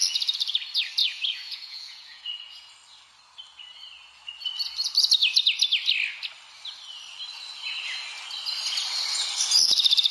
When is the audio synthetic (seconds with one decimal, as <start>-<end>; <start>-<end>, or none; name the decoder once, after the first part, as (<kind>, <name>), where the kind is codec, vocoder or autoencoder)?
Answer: 1.0-2.7 (vocoder, Vocos)